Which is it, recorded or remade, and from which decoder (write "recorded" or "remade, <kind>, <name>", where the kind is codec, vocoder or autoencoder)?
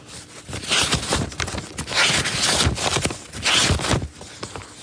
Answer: recorded